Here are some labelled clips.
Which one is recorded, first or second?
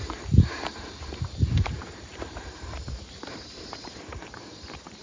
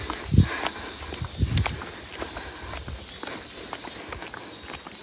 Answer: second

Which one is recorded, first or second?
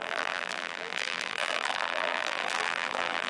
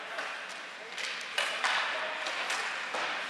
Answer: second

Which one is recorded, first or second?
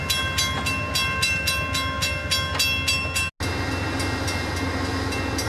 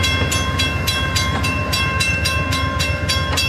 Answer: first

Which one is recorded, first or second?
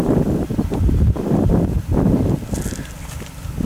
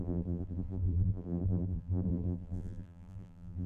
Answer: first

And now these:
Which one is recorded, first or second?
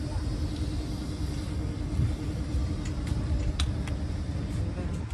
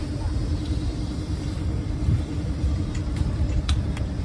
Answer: first